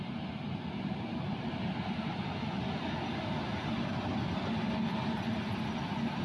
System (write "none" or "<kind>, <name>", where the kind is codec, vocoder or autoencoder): none